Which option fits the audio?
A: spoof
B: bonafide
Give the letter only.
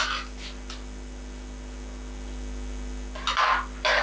B